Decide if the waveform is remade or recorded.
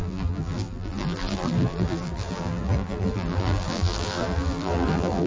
remade